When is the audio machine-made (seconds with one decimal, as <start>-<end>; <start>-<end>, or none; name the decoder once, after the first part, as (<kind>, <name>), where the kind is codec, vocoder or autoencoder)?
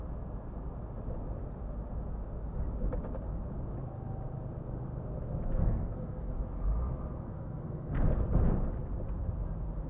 5.6-6.3 (codec, SNAC); 7.1-8.0